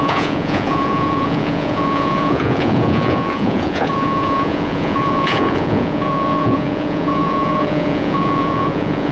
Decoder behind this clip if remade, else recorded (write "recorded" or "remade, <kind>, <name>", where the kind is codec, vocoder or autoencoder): remade, vocoder, Vocos